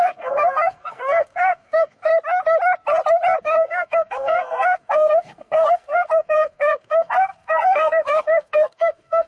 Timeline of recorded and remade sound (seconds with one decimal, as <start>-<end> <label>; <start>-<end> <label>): 0.0-2.1 remade; 2.1-3.4 recorded; 3.4-9.3 remade